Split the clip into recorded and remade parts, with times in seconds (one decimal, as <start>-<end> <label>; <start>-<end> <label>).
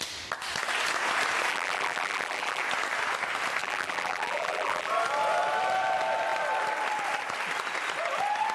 0.0-1.5 recorded; 1.5-2.6 remade; 2.6-3.6 recorded; 3.6-4.9 remade; 4.9-8.5 recorded